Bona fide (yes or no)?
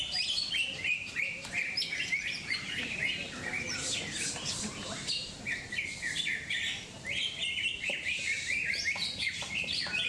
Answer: no